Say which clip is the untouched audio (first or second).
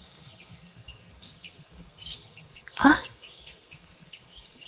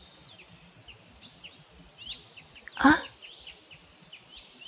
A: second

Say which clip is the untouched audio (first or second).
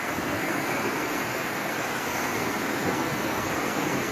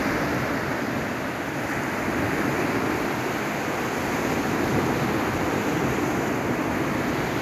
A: second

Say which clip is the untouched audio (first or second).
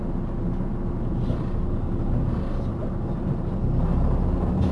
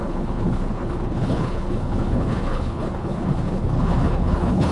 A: first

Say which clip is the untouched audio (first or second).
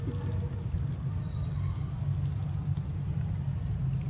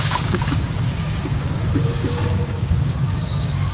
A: first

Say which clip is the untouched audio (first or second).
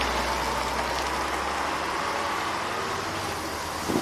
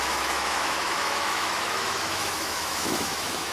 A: first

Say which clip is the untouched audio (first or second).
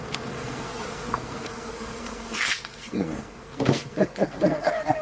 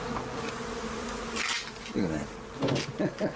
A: second